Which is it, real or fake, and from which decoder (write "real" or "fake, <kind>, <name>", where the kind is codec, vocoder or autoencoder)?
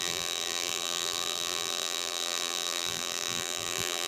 fake, vocoder, BigVGAN v2